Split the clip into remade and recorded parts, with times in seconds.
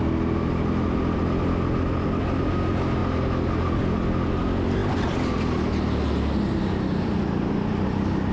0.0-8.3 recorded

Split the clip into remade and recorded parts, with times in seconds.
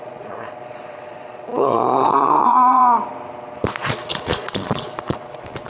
0.0-2.8 remade; 2.8-3.7 recorded; 3.7-5.7 remade